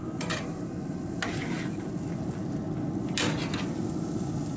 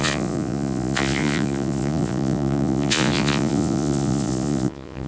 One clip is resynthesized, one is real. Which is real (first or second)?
first